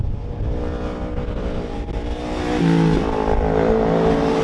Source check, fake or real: real